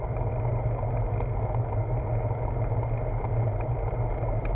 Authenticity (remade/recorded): recorded